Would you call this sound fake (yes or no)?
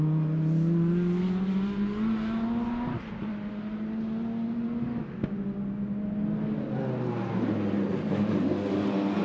no